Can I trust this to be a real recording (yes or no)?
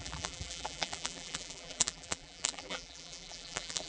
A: no